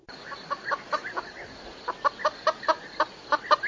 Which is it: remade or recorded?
recorded